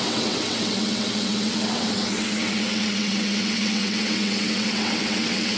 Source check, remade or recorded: remade